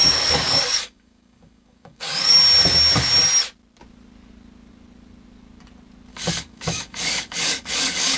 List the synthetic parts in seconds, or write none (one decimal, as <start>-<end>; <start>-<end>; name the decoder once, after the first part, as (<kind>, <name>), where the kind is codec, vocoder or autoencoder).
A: 0.0-2.4 (codec, DAC); 6.1-8.2